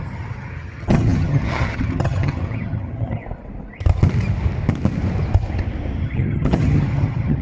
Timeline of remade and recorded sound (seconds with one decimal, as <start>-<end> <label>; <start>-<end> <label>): 0.0-3.2 remade; 3.2-6.0 recorded; 6.0-7.4 remade